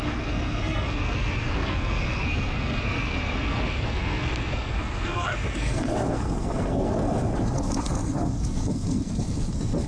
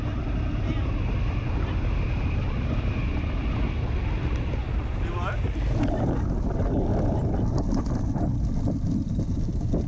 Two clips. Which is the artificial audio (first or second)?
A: first